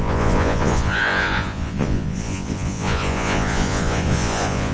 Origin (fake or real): fake